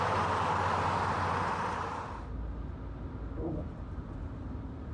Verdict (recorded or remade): recorded